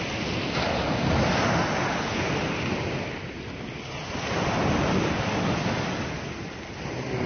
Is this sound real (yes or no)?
yes